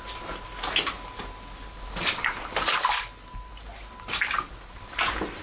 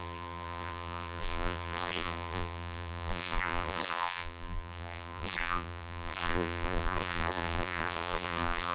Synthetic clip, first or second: second